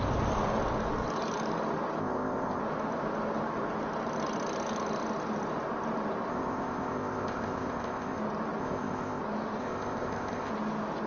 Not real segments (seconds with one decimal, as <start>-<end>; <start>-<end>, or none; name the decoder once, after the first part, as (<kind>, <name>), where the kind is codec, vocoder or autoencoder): 2.0-2.6 (codec, ZipCodec); 6.3-8.2; 8.6-9.2; 9.6-10.5